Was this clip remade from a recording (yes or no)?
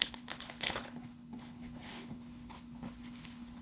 yes